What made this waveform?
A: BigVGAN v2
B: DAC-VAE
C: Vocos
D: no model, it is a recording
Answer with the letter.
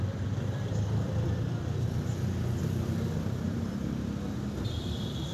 A